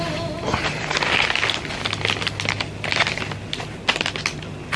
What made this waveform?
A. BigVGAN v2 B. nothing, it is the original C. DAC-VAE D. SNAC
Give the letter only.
B